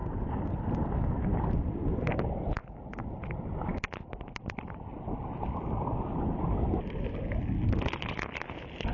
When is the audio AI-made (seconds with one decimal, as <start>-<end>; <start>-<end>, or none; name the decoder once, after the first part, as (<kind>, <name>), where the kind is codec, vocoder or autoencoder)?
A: none